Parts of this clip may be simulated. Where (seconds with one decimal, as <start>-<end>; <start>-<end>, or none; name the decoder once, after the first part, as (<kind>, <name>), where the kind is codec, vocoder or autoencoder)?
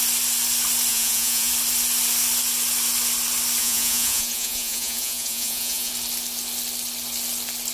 0.9-1.5 (vocoder, Vocos); 3.6-5.9